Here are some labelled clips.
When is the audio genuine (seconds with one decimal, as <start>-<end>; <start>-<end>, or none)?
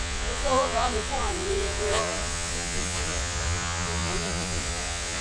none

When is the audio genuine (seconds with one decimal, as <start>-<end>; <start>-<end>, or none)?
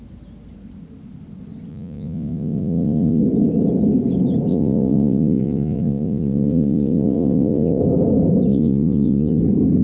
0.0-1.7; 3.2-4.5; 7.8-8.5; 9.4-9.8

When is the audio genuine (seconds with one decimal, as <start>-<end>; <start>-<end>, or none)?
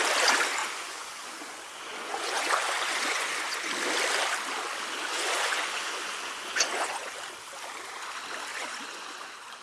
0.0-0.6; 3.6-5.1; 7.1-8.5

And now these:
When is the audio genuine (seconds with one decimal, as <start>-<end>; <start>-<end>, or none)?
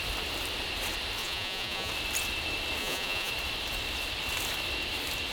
0.0-1.2; 1.9-2.8; 3.3-5.3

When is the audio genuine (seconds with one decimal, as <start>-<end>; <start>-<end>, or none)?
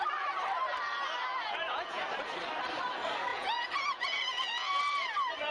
0.0-1.3; 2.0-3.3; 4.8-5.5